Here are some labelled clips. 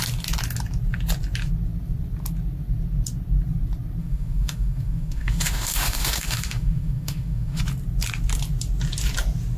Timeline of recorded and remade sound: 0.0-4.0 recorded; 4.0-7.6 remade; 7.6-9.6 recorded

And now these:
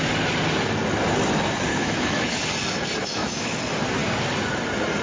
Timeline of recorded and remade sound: 0.0-1.7 recorded; 1.7-2.4 remade; 2.4-3.0 recorded; 3.0-3.6 remade; 3.6-5.0 recorded

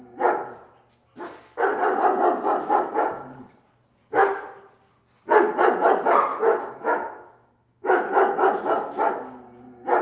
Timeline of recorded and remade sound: 0.0-4.0 recorded; 4.0-4.6 remade; 4.6-6.3 recorded; 6.3-8.1 remade; 8.1-10.0 recorded

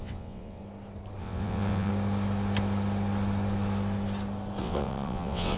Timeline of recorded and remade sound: 0.0-0.6 remade; 0.6-1.2 recorded; 1.2-1.9 remade; 1.9-4.6 recorded; 4.6-5.6 remade